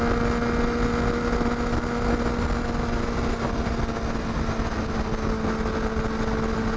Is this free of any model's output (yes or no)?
yes